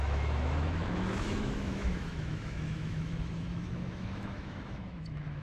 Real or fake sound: fake